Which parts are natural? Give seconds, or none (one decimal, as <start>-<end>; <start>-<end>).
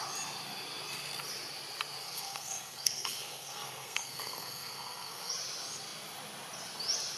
0.0-2.0; 5.3-7.2